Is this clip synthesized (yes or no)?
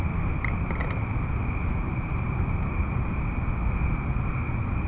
no